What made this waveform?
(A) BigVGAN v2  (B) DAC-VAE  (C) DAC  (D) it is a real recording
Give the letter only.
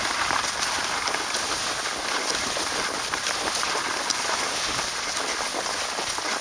D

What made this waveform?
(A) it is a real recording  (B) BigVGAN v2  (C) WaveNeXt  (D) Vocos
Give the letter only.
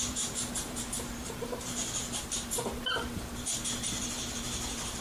B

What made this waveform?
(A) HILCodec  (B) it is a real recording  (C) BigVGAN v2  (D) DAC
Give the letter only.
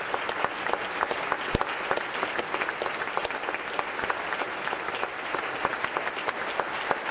B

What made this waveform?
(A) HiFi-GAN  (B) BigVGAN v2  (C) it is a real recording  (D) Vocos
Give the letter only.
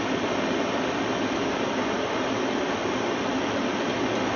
B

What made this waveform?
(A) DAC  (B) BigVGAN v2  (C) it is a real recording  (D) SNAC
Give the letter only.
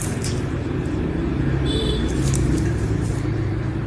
B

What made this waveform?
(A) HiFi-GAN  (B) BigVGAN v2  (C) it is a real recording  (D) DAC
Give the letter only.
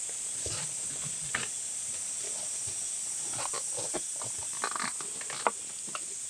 C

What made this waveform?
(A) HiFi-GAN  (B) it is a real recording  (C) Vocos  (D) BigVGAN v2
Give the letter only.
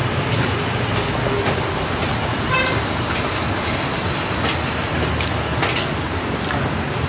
B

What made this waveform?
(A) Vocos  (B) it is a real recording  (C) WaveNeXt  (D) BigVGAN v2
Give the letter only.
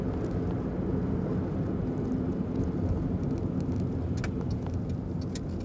B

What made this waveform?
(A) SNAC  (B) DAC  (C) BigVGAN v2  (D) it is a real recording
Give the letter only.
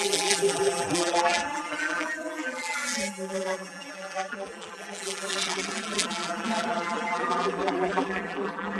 C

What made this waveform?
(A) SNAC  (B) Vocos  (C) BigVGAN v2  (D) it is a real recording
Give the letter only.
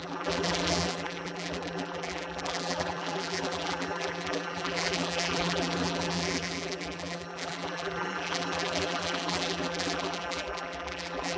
C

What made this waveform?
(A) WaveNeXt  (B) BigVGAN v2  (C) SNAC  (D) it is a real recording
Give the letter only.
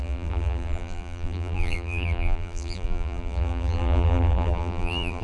B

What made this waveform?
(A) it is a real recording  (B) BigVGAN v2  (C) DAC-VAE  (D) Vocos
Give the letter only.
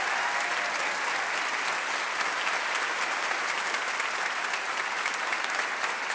A